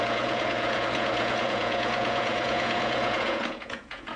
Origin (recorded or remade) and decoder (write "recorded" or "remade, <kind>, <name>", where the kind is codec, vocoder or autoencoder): remade, vocoder, Vocos